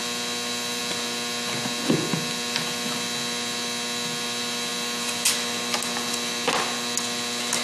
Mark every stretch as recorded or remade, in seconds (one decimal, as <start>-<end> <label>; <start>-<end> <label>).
0.0-7.6 recorded